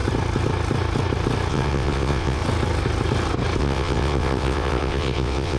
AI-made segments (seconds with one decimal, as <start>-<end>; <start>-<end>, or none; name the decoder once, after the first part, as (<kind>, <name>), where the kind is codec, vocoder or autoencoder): 1.5-2.4 (vocoder, WaveNeXt); 3.6-5.6